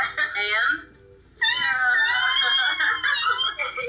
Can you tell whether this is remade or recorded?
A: recorded